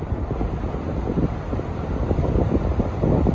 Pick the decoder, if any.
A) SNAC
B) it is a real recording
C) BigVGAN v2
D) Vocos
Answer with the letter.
B